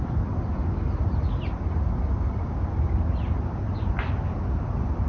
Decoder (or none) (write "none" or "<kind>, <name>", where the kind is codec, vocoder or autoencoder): none